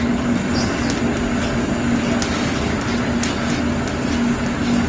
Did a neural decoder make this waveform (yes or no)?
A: no